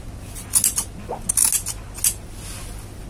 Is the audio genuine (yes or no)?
yes